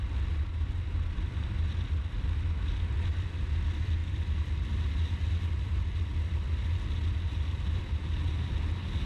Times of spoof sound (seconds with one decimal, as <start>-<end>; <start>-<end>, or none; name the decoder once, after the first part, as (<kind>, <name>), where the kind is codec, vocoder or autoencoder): none